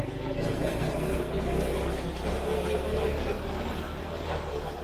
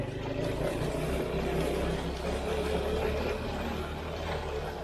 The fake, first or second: first